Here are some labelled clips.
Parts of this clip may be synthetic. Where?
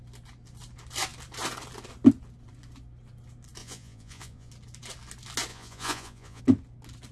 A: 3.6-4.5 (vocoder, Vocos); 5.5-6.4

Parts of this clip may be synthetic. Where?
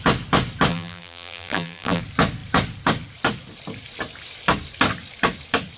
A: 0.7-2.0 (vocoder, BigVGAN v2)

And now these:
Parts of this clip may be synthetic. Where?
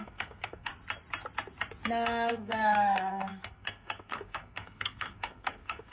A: 0.0-0.7 (codec, SNAC); 2.3-5.9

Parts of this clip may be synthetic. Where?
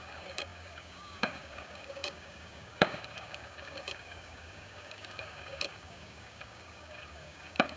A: 0.0-7.8 (codec, DAC)